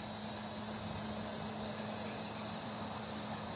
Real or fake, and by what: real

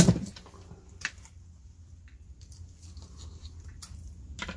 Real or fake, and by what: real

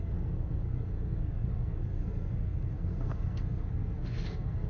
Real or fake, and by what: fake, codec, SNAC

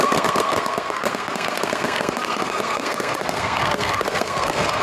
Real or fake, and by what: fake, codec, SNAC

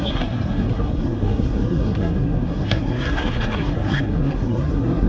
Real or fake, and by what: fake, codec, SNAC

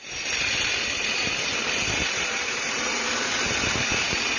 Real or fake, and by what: real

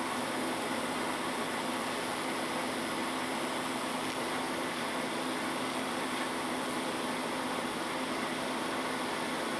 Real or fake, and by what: real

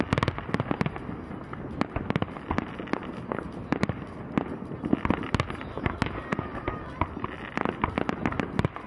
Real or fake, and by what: real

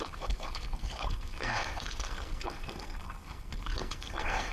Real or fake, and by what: fake, codec, SNAC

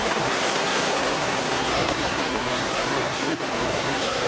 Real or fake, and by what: fake, codec, SNAC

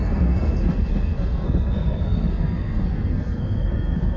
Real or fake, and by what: fake, codec, SNAC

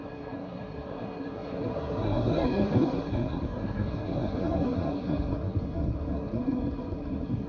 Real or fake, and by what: fake, codec, SNAC